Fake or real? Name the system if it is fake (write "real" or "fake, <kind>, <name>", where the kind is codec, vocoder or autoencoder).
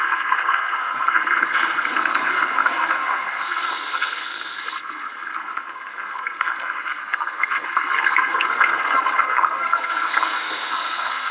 fake, codec, SNAC